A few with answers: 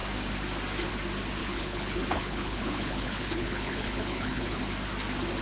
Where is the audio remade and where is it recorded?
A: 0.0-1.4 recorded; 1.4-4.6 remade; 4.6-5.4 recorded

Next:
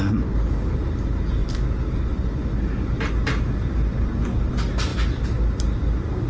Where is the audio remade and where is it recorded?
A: 0.0-6.3 recorded

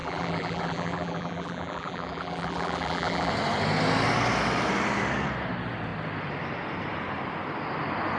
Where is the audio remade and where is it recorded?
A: 0.0-3.3 remade; 3.3-8.2 recorded